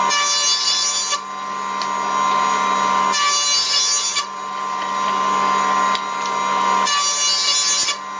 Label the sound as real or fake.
real